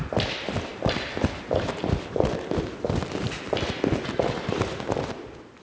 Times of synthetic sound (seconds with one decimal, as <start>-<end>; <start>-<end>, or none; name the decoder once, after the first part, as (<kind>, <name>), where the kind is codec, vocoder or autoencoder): none